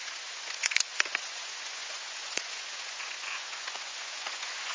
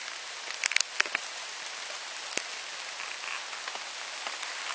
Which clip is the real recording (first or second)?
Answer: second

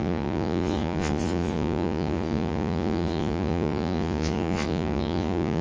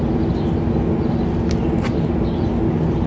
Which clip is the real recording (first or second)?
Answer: second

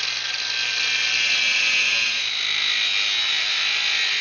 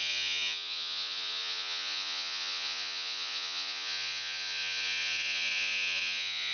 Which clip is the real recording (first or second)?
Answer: first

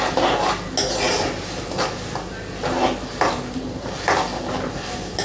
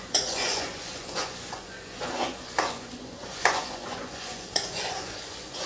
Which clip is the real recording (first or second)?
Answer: first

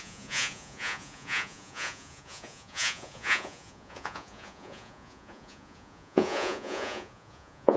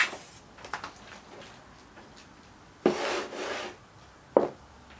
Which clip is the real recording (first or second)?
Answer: second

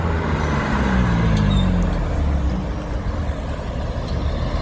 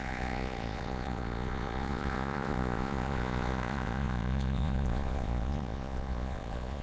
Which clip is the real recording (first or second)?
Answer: first